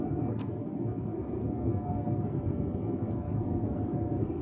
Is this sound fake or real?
fake